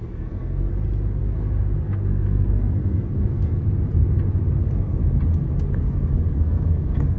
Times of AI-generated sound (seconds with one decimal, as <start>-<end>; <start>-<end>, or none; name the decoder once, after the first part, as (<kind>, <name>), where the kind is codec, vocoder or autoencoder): 0.0-0.7 (codec, SNAC); 1.2-3.6; 4.6-5.0; 6.3-7.2